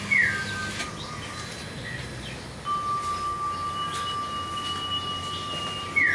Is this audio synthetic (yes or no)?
no